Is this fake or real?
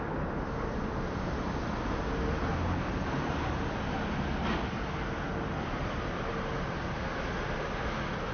real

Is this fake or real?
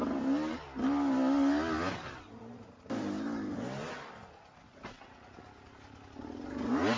real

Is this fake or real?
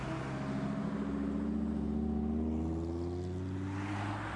real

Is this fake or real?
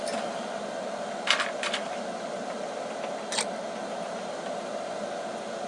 real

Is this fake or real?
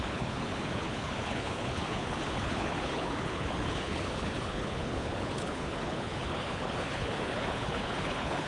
fake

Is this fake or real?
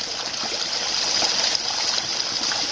real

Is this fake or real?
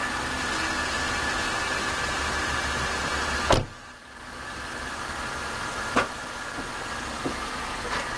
real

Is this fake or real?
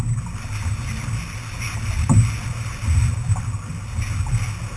real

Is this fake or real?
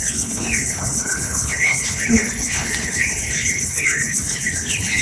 fake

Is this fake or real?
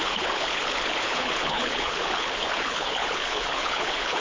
fake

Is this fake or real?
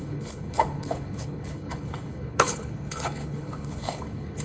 fake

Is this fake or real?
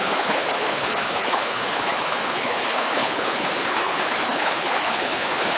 fake